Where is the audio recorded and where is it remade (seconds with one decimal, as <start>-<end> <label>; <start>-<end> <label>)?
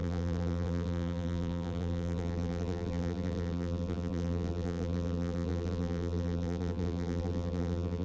0.0-8.0 remade